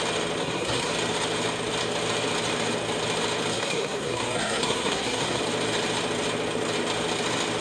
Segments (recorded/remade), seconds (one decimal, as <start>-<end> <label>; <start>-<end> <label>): 0.0-0.4 recorded; 0.4-0.9 remade; 0.9-3.5 recorded; 3.5-5.4 remade; 5.4-7.6 recorded